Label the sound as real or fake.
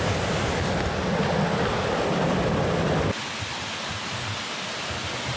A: real